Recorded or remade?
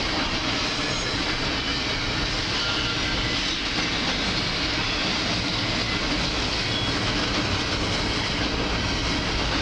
recorded